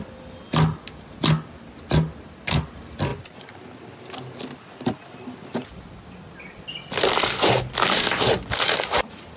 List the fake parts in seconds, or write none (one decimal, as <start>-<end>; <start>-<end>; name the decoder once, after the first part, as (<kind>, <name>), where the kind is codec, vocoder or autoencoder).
none